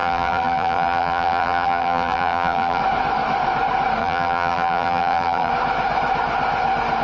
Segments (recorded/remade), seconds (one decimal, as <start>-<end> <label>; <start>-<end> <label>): 0.0-2.8 remade; 2.8-4.0 recorded; 4.0-5.5 remade; 5.5-7.0 recorded